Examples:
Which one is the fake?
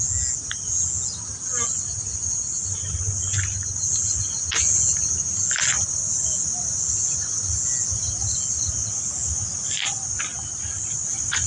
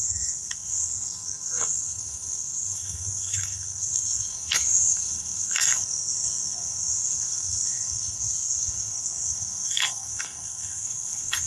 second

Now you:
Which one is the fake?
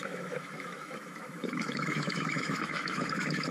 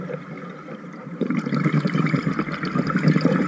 first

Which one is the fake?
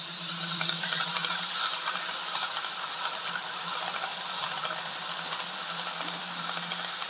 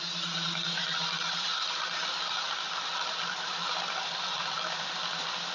first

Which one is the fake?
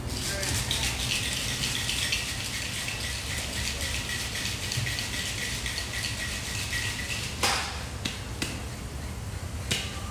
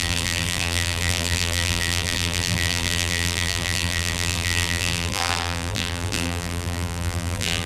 second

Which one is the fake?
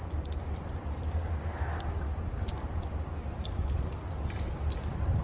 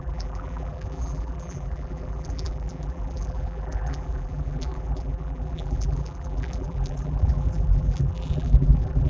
second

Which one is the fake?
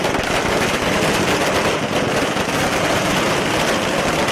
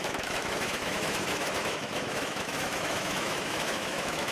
second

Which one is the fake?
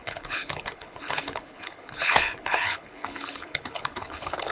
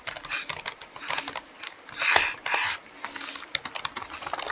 first